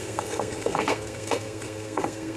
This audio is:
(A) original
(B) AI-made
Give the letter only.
B